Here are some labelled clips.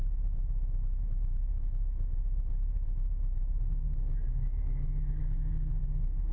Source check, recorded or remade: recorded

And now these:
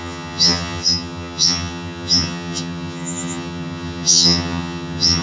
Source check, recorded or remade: remade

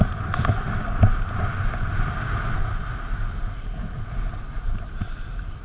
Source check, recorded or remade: recorded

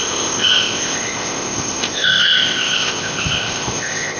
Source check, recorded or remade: remade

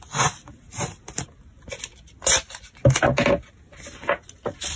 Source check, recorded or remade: recorded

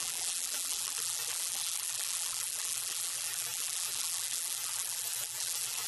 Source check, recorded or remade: remade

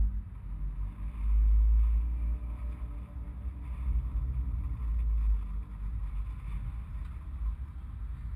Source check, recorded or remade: recorded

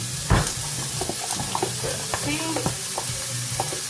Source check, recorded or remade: recorded